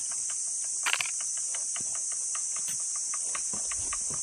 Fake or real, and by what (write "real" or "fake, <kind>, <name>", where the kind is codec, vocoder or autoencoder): real